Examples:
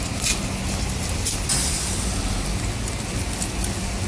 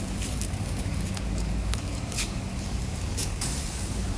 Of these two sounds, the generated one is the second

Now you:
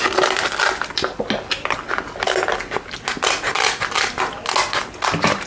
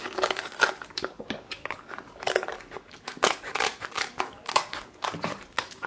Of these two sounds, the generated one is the second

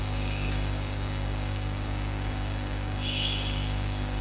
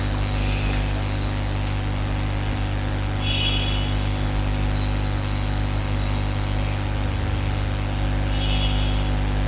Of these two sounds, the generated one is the first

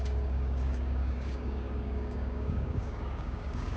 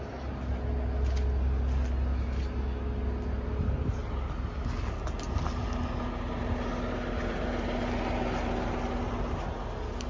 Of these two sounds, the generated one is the first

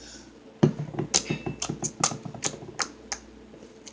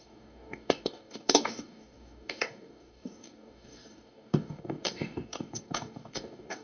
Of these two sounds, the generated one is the second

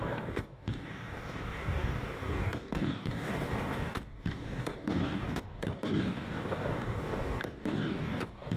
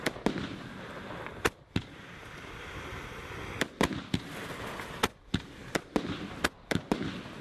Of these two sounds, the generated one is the first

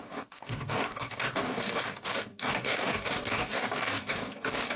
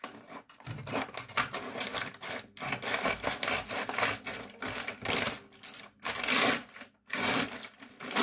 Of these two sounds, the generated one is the first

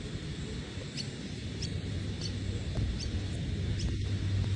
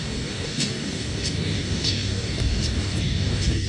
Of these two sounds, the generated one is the second